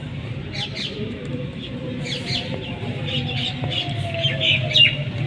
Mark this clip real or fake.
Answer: real